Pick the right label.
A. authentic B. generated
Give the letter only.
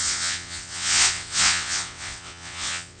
B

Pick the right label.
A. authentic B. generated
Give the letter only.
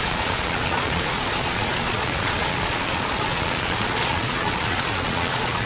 B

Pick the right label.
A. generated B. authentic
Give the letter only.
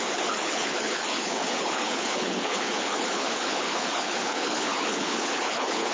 A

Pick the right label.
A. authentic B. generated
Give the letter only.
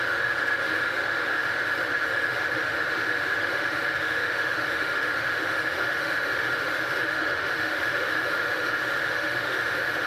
B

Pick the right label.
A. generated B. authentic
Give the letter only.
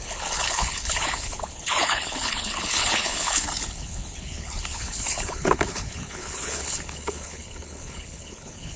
A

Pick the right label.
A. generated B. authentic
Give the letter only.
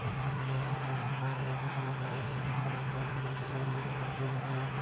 A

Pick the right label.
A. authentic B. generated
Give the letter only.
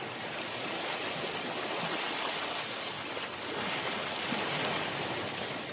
A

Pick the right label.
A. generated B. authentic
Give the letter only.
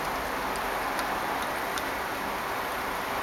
B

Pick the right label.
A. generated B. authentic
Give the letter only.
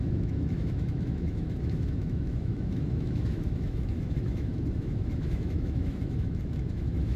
A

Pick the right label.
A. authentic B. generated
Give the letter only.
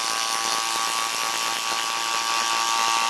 A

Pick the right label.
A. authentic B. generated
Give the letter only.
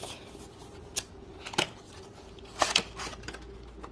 A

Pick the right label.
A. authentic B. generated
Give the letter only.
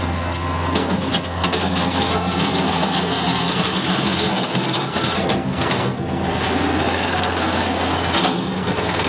B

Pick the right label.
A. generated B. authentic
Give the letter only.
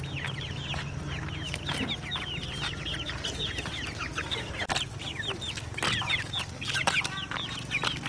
B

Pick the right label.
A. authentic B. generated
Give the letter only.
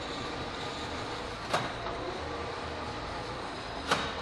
B